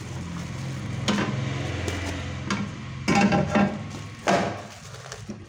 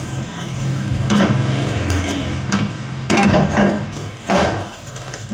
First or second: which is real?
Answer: first